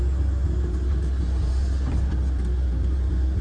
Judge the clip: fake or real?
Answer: real